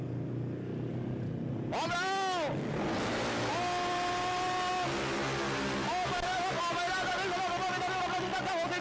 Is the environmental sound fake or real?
real